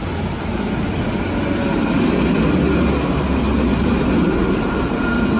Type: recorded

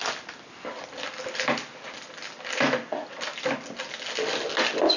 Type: recorded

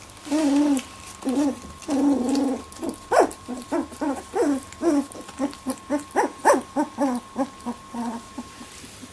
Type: recorded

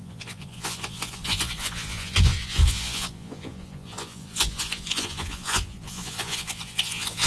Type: remade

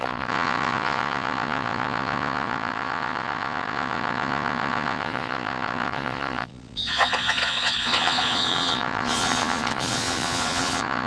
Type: remade